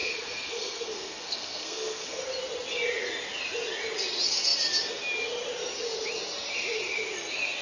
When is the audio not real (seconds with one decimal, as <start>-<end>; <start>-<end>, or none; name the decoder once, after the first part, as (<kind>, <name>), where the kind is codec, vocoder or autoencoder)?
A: 0.0-2.2 (codec, SNAC)